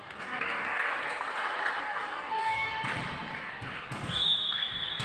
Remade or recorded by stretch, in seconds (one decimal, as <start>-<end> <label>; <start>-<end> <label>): 0.0-1.0 remade; 1.0-1.8 recorded; 1.8-2.7 remade; 2.7-3.4 recorded; 3.4-5.0 remade